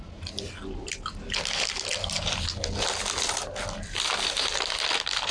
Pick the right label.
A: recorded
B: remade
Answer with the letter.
A